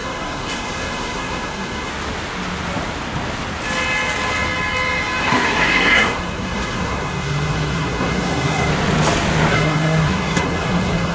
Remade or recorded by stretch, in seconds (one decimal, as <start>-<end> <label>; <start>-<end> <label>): 0.0-1.9 remade; 1.9-5.2 recorded; 5.2-8.7 remade; 8.7-9.5 recorded; 9.5-11.1 remade